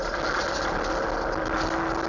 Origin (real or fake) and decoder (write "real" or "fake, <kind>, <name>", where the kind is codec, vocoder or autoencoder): real